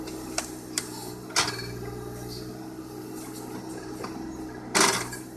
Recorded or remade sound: recorded